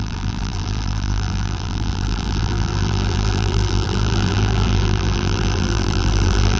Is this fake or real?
fake